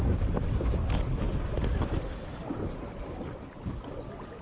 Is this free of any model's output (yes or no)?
yes